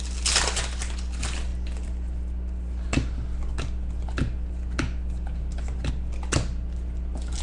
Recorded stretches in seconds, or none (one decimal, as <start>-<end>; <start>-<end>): 0.0-7.4